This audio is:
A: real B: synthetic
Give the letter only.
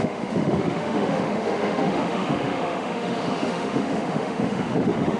B